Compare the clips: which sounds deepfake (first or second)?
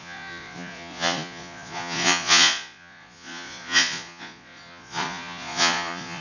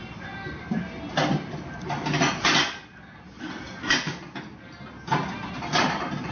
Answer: first